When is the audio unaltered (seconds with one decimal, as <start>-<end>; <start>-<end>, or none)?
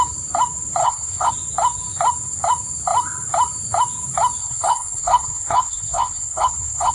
0.0-0.8; 1.3-4.4